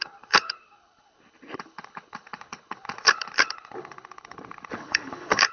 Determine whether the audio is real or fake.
fake